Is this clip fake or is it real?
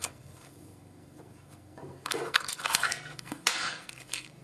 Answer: fake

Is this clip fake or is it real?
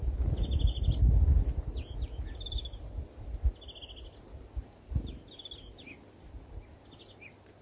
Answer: real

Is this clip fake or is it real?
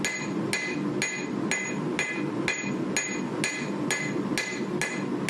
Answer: real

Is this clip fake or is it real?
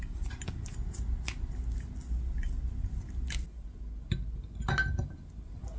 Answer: real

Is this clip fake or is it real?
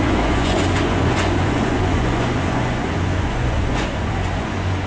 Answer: fake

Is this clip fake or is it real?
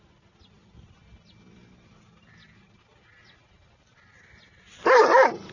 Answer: real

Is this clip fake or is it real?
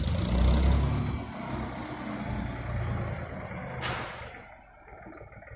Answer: real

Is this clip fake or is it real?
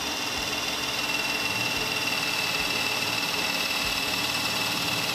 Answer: fake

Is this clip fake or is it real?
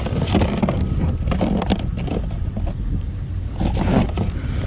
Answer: real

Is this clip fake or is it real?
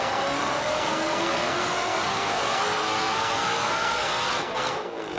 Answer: fake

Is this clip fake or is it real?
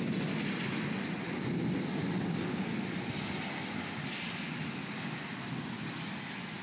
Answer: real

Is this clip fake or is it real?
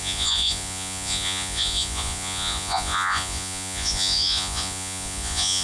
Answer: fake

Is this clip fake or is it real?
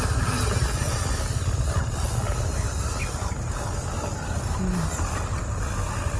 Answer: real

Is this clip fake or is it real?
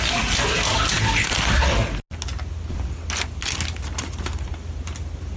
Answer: real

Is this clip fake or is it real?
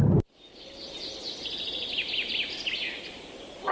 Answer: real